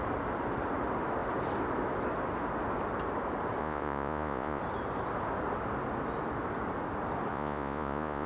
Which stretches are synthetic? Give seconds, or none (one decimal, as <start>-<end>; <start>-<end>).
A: 3.6-4.6; 7.3-8.3